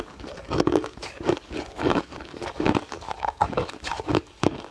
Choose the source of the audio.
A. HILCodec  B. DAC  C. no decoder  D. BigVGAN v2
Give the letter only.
B